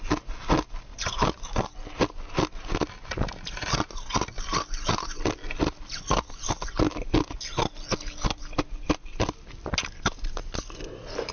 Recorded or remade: recorded